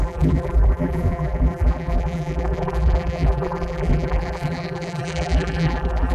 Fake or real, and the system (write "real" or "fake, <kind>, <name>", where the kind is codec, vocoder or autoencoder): fake, vocoder, BigVGAN v2